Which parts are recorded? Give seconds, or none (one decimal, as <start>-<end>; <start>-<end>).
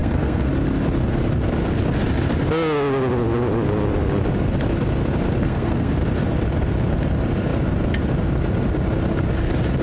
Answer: 0.5-5.4; 5.9-9.8